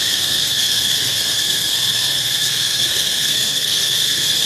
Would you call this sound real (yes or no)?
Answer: no